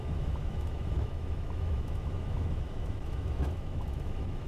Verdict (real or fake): fake